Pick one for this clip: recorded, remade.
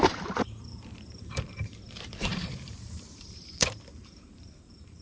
remade